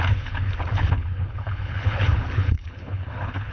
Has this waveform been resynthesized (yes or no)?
yes